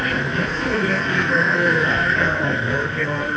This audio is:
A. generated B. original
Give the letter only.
A